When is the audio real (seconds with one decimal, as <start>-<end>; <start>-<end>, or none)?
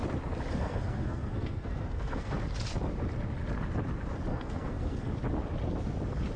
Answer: 0.0-0.5; 2.3-4.3; 5.1-6.4